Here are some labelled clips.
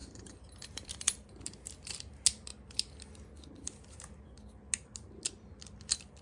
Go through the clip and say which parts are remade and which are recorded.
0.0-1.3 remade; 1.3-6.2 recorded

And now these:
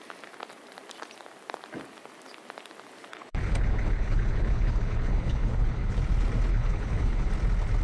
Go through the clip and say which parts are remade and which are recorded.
0.0-3.1 recorded; 3.1-5.9 remade; 5.9-6.5 recorded; 6.5-7.3 remade; 7.3-7.8 recorded

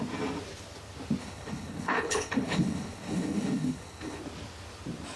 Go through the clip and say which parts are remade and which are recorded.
0.0-1.2 recorded; 1.2-4.2 remade; 4.2-5.2 recorded

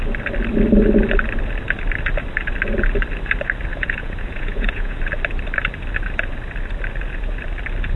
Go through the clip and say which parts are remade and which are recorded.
0.0-3.7 recorded; 3.7-5.0 remade; 5.0-8.0 recorded

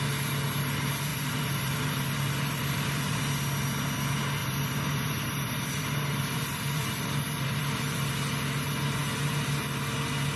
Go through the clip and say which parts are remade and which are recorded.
0.0-1.1 recorded; 1.1-3.2 remade; 3.2-4.4 recorded; 4.4-8.1 remade; 8.1-10.4 recorded